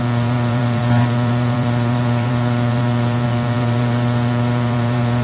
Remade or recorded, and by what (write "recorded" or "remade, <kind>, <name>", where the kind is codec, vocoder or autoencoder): remade, vocoder, BigVGAN v2